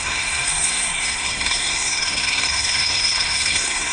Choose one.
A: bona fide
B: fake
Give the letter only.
B